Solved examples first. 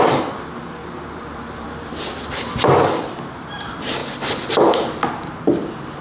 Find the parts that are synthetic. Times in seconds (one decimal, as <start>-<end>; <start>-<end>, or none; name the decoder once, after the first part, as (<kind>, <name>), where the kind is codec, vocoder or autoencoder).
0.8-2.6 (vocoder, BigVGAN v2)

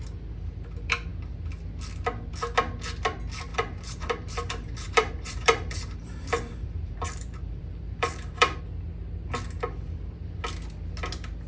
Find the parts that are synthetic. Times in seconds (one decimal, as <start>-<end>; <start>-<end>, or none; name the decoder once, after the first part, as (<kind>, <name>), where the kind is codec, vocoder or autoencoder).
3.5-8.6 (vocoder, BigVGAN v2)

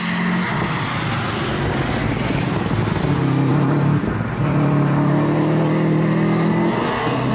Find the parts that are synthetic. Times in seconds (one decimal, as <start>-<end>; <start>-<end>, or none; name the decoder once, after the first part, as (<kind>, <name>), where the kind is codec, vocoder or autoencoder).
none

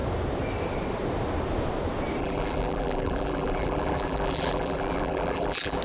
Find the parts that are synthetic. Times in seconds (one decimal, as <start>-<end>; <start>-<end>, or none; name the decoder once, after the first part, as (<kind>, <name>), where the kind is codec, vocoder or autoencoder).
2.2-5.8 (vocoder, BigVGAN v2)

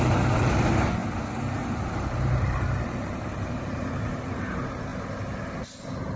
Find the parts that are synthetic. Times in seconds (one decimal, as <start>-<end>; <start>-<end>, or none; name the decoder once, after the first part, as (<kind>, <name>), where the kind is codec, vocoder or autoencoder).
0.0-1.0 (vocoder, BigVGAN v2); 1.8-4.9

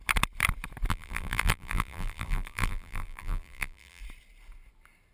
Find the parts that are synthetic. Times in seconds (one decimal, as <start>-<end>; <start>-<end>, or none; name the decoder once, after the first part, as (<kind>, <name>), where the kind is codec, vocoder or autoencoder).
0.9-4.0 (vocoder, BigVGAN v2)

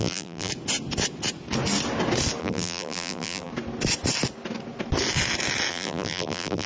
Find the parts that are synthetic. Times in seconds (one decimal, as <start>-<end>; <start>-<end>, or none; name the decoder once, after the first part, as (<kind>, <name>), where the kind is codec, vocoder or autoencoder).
0.0-0.5 (vocoder, BigVGAN v2); 2.4-3.5; 5.7-6.7